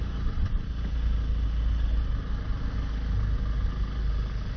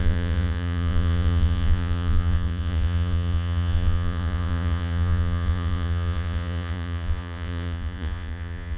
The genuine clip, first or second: first